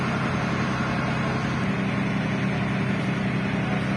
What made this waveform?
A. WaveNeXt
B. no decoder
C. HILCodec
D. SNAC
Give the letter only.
B